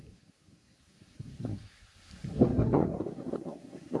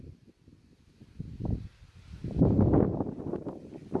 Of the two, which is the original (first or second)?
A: second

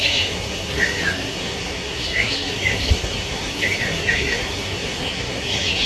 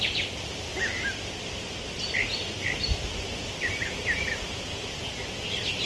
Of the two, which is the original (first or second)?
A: second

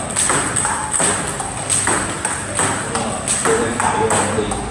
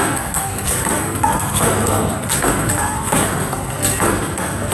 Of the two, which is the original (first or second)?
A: first